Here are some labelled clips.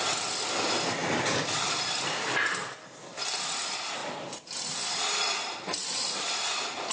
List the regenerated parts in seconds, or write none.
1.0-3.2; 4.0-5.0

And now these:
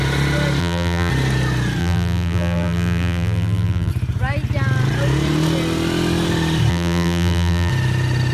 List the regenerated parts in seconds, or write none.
0.6-1.1; 1.8-3.9; 6.7-7.7

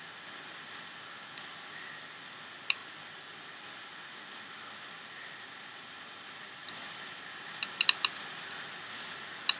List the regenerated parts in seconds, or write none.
none

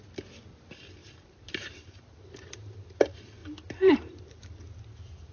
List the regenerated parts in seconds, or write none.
1.0-2.0; 3.4-4.2

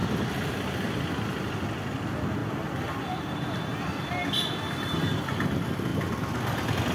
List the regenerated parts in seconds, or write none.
4.2-5.2